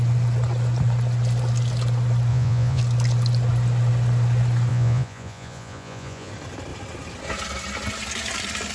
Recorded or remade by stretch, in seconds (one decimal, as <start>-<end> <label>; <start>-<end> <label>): 0.0-2.3 recorded; 2.3-2.8 remade; 2.8-4.7 recorded; 4.7-6.3 remade; 6.3-8.7 recorded